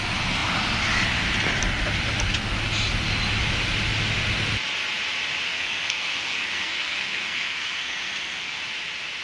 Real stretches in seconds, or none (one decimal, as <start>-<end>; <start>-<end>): 0.0-5.5; 8.6-9.2